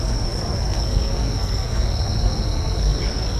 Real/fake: fake